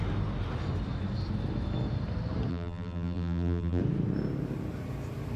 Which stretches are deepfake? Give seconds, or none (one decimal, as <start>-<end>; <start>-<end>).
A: 2.5-3.8